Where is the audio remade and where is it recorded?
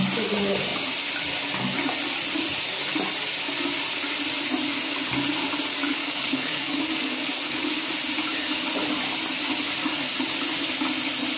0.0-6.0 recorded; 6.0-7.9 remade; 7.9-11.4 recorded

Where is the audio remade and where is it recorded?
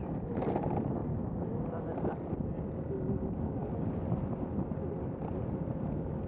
0.0-6.3 recorded